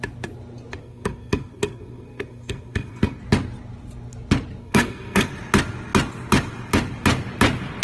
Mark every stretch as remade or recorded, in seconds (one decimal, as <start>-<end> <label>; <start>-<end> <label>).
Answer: 0.0-0.8 recorded; 0.8-3.2 remade; 3.2-4.6 recorded; 4.6-5.3 remade; 5.3-7.8 recorded